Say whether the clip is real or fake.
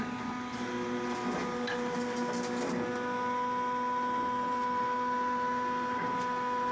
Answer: real